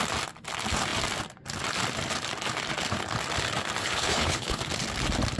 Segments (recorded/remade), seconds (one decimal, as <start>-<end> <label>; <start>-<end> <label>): 0.0-3.8 recorded; 3.8-4.6 remade; 4.6-5.4 recorded